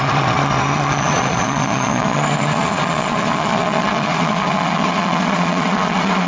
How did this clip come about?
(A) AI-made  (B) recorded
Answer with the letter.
A